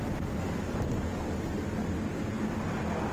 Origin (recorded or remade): recorded